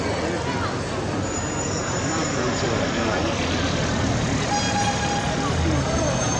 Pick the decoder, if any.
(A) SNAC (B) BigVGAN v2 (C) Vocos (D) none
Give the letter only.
D